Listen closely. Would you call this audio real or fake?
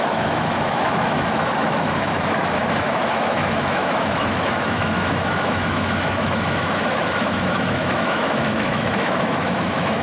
fake